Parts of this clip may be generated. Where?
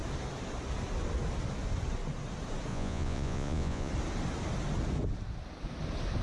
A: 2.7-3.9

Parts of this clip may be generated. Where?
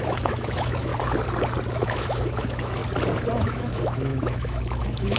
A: 0.0-0.9; 1.7-2.8; 3.3-5.2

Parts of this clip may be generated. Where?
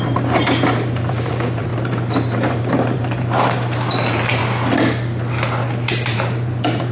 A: 0.0-4.4; 5.9-6.9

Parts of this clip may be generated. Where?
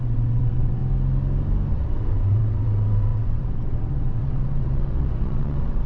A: 0.0-0.8; 1.7-5.9